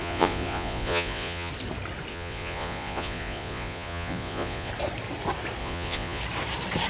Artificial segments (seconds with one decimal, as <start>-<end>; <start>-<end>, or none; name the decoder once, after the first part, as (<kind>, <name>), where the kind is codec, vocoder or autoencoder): 0.0-1.5 (vocoder, Vocos); 2.1-4.7; 5.6-6.2